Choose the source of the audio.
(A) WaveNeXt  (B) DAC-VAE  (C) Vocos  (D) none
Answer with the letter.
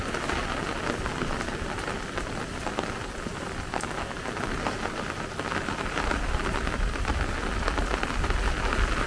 D